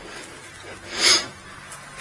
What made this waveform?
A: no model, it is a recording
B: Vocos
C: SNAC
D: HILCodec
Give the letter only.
A